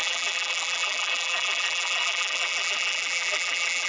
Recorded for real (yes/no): no